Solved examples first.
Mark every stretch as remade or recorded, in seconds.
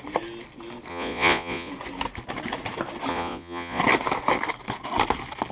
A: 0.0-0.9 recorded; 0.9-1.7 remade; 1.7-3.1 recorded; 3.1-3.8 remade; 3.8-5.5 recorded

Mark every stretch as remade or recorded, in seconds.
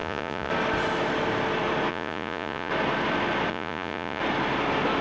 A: 0.0-0.5 remade; 0.5-1.9 recorded; 1.9-2.7 remade; 2.7-3.5 recorded; 3.5-4.2 remade; 4.2-5.0 recorded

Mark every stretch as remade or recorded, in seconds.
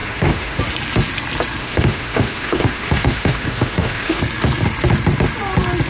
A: 0.0-0.6 remade; 0.6-1.6 recorded; 1.6-4.2 remade; 4.2-5.9 recorded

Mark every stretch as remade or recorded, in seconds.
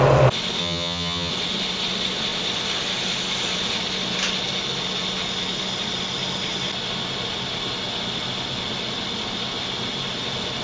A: 0.0-0.6 recorded; 0.6-1.3 remade; 1.3-10.6 recorded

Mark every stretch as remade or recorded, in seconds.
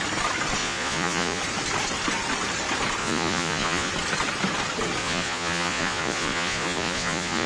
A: 0.0-0.6 recorded; 0.6-1.4 remade; 1.4-3.0 recorded; 3.0-3.9 remade; 3.9-5.0 recorded; 5.0-7.5 remade